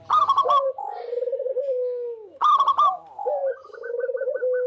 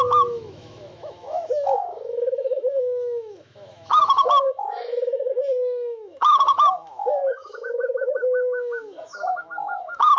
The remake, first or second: second